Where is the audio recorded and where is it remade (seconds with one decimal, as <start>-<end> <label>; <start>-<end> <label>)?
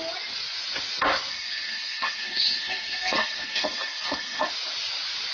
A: 0.0-1.3 recorded; 1.3-4.5 remade; 4.5-5.3 recorded